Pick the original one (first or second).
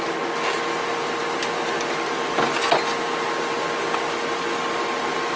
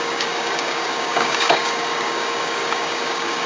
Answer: first